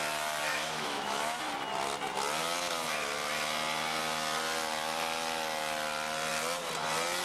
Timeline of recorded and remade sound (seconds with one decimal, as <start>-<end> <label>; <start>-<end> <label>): 0.0-0.5 recorded; 0.5-1.4 remade; 1.4-7.2 recorded